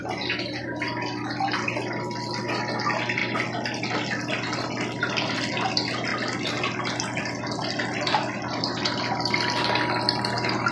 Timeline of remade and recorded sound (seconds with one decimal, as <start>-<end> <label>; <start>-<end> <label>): 0.0-10.7 recorded